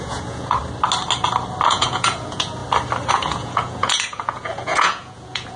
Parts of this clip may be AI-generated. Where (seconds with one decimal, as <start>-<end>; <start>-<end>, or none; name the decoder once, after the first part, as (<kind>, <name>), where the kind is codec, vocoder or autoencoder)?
0.0-0.6 (vocoder, Vocos); 1.7-2.6; 3.1-5.6